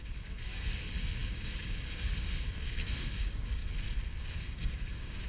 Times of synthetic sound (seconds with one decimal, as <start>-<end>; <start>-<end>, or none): 0.0-3.6; 4.2-5.3